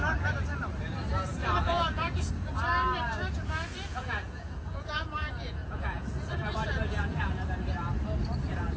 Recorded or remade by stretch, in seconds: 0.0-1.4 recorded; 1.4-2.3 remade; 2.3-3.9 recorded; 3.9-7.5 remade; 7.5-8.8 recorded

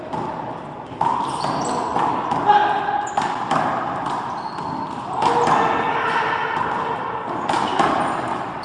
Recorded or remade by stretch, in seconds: 0.0-8.6 recorded

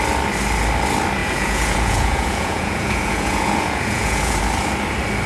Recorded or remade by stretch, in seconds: 0.0-1.2 recorded; 1.2-4.4 remade; 4.4-5.3 recorded

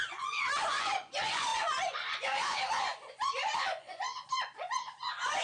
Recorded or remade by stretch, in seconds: 0.0-5.4 remade

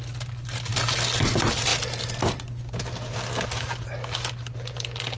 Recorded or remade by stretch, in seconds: 0.0-5.2 recorded

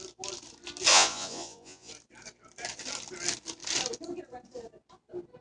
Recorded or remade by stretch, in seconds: 0.0-0.9 recorded; 0.9-1.9 remade; 1.9-5.4 recorded